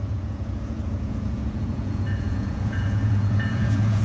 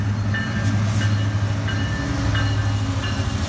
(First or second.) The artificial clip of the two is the first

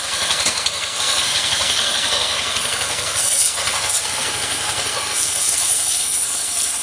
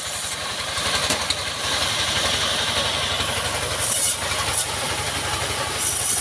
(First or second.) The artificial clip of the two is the first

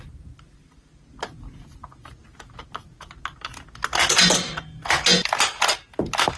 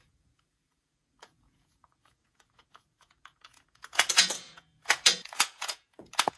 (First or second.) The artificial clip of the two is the second